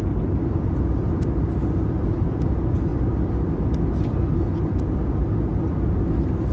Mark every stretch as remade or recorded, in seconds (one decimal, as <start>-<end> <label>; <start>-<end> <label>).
0.0-6.5 recorded